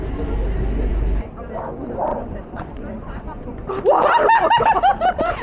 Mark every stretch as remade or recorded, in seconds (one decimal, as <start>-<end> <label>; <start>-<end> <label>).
0.0-2.1 recorded; 2.1-3.7 remade; 3.7-5.4 recorded